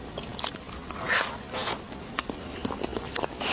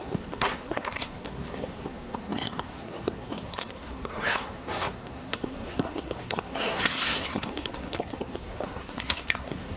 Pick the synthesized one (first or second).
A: second